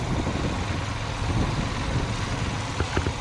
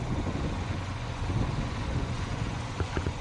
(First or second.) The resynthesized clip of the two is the second